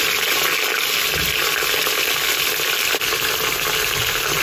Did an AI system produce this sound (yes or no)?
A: no